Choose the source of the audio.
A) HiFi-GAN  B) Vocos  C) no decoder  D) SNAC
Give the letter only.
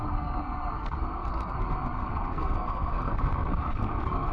D